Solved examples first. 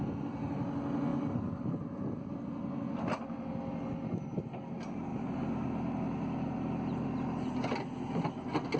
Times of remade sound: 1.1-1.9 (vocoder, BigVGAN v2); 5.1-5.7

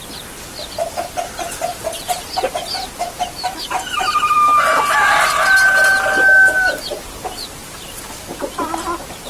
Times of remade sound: 1.7-3.7 (vocoder, BigVGAN v2); 7.6-8.4

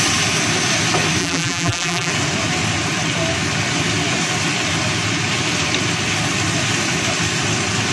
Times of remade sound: 1.2-2.1 (vocoder, BigVGAN v2)

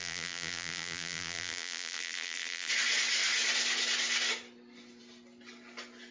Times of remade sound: 0.0-2.7 (vocoder, BigVGAN v2)

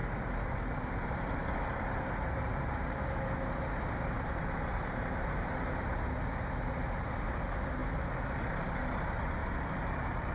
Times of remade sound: 4.8-5.9 (vocoder, BigVGAN v2); 9.4-10.3

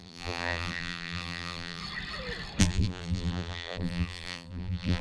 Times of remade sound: 0.0-1.8 (vocoder, BigVGAN v2); 2.6-5.0

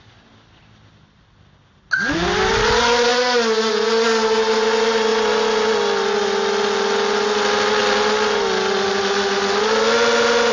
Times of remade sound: none